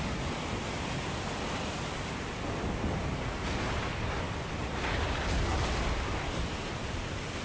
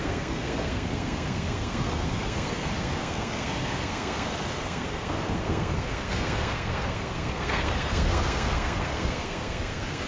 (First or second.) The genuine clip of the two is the first